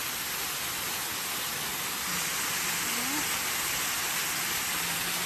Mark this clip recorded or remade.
recorded